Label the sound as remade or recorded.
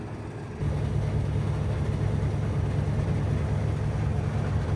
recorded